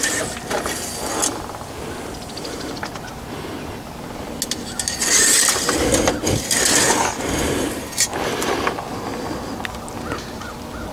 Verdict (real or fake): real